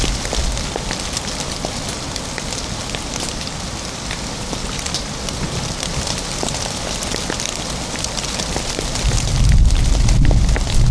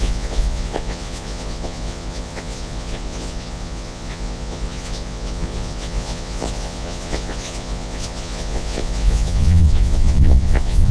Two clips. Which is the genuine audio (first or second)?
first